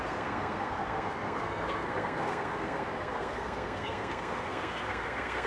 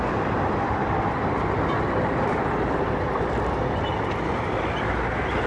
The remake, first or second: first